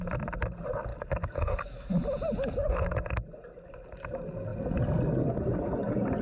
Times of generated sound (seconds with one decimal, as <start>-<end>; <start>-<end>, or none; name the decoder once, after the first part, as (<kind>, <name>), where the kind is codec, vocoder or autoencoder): 0.9-1.9 (codec, DAC)